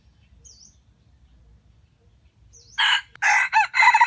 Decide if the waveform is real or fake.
real